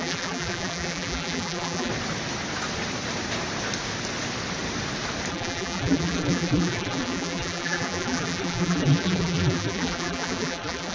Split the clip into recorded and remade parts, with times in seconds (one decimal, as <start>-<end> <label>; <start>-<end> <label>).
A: 0.0-1.9 remade; 1.9-5.3 recorded; 5.3-10.9 remade